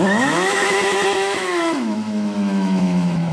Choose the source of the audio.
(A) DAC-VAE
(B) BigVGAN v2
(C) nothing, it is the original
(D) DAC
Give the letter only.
A